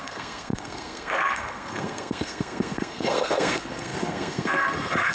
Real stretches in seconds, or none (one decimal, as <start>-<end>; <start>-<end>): none